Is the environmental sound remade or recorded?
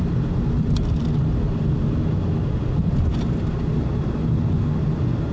recorded